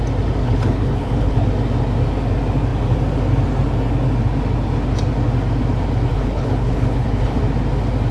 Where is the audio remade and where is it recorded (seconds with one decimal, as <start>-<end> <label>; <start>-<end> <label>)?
0.0-0.4 recorded; 0.4-1.5 remade; 1.5-6.1 recorded; 6.1-7.4 remade; 7.4-8.1 recorded